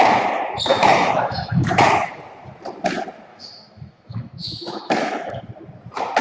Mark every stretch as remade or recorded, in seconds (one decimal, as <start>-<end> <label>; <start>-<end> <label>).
0.0-0.7 recorded; 0.7-2.1 remade; 2.1-3.3 recorded; 3.3-5.4 remade; 5.4-6.2 recorded